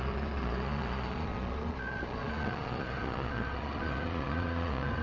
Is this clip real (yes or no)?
no